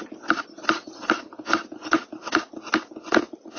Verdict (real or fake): real